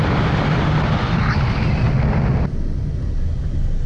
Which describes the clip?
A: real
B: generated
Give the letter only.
A